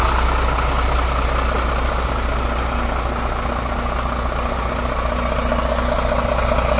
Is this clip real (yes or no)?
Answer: yes